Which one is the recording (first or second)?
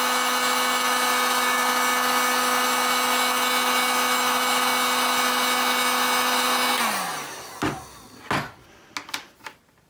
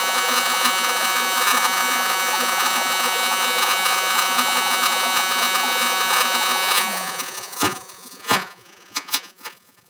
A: first